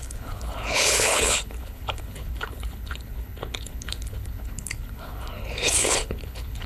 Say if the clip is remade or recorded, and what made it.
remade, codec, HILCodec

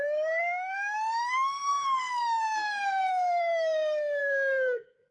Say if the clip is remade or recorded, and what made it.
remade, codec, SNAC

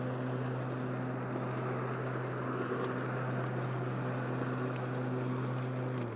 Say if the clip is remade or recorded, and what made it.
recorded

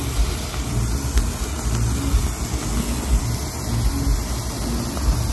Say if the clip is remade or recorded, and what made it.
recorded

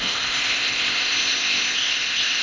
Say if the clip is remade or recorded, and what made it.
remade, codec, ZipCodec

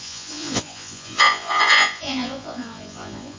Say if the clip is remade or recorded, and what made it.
remade, vocoder, Vocos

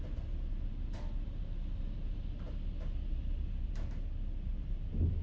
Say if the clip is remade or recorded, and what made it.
recorded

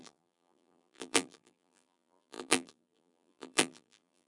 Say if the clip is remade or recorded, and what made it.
remade, vocoder, BigVGAN v2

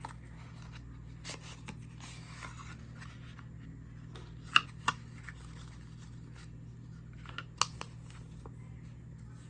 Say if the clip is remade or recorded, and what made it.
recorded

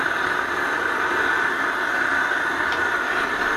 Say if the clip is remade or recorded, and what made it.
recorded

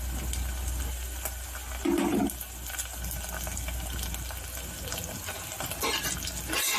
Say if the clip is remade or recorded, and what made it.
recorded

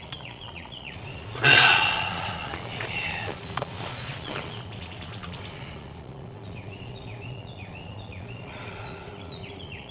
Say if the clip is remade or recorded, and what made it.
remade, vocoder, Vocos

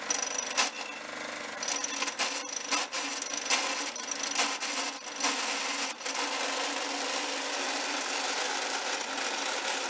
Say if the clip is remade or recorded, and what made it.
recorded